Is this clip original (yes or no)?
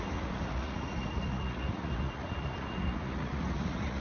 no